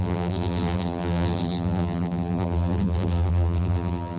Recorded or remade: remade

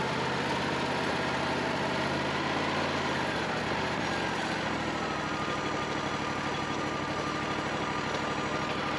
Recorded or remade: recorded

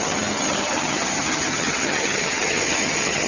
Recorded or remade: remade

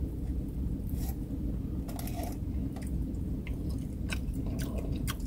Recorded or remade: recorded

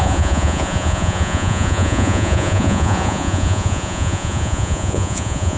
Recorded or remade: remade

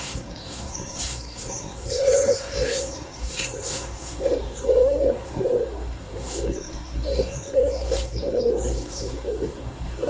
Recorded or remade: remade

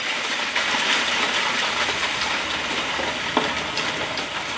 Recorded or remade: recorded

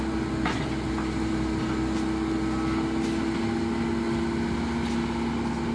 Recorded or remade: recorded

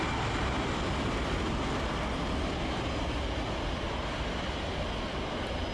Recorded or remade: recorded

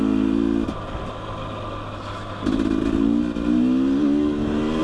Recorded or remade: recorded